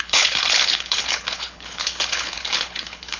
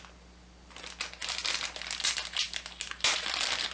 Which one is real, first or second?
second